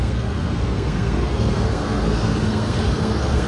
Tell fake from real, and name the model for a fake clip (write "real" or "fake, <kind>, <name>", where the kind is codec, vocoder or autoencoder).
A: fake, codec, SNAC